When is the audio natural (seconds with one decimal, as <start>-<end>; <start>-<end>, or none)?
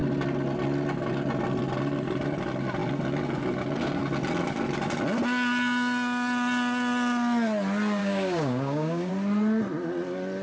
0.0-8.0; 9.1-10.4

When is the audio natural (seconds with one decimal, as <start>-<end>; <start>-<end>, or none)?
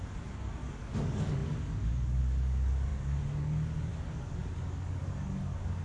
none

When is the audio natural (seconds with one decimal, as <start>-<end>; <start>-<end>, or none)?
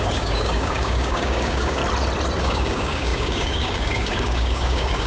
1.8-2.4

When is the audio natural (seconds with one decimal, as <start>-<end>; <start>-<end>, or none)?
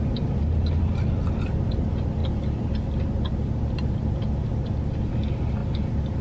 0.0-6.2